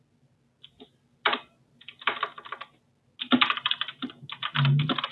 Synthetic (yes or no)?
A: no